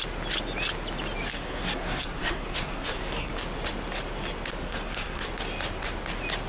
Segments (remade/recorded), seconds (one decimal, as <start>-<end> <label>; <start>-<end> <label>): 0.0-1.3 recorded; 1.3-3.3 remade; 3.3-4.6 recorded; 4.6-5.3 remade; 5.3-6.5 recorded